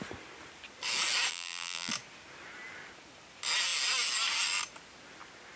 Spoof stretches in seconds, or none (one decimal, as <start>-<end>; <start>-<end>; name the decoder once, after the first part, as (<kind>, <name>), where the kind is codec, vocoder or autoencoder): 1.3-1.9 (vocoder, BigVGAN v2)